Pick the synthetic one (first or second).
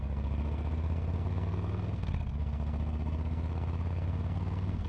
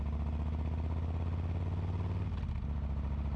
first